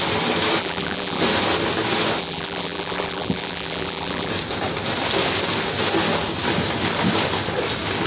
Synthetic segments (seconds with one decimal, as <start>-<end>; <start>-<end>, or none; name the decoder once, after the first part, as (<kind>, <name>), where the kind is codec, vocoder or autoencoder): 0.6-1.2 (vocoder, BigVGAN v2); 2.2-4.3